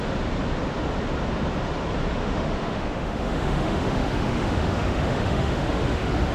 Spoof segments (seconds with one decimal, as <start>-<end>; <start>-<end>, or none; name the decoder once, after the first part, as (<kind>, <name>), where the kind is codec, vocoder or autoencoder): 2.2-6.3 (autoencoder, DAC-VAE)